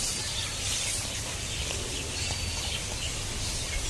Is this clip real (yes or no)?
yes